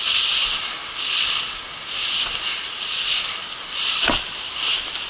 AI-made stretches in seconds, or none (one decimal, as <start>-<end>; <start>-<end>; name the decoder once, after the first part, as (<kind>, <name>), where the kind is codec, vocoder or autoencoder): 3.4-4.3 (vocoder, BigVGAN v2)